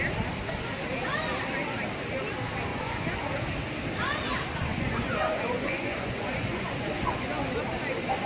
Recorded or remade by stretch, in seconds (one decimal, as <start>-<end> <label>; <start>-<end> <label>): 0.0-2.7 recorded; 2.7-3.2 remade; 3.2-4.7 recorded; 4.7-7.4 remade; 7.4-8.3 recorded